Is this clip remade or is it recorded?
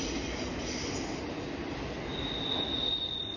recorded